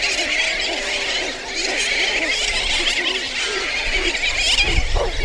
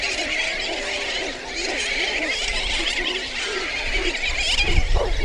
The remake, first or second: second